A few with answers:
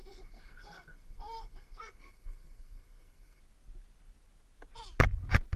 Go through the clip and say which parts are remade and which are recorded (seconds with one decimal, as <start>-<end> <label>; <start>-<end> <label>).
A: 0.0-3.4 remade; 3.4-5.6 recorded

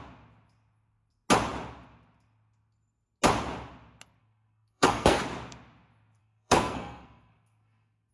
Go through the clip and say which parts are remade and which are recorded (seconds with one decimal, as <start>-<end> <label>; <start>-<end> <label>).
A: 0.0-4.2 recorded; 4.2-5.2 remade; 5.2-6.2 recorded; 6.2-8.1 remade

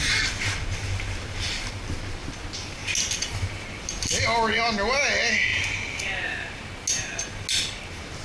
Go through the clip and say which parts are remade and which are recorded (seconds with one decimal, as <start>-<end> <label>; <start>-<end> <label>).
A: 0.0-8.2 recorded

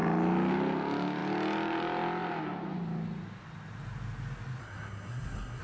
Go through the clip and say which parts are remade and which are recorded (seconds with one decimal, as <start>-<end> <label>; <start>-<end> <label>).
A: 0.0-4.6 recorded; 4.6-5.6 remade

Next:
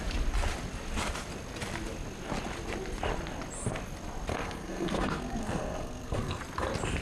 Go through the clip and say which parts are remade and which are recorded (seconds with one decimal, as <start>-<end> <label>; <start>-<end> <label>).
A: 0.0-4.3 recorded; 4.3-6.4 remade; 6.4-7.0 recorded

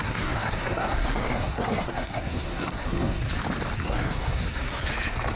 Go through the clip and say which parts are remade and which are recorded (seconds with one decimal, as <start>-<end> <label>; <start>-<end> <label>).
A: 0.0-3.2 remade; 3.2-3.8 recorded; 3.8-4.9 remade; 4.9-5.4 recorded